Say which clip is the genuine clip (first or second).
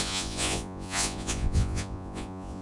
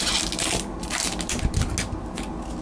second